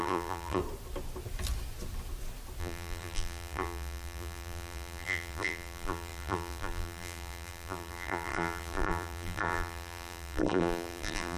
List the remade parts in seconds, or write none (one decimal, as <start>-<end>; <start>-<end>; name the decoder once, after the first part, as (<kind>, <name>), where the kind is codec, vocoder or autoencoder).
0.0-0.6 (vocoder, BigVGAN v2); 2.6-11.4